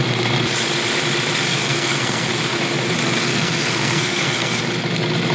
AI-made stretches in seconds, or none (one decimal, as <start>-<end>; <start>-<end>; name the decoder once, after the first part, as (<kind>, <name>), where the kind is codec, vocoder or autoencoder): 1.5-2.3 (codec, SNAC); 3.3-4.6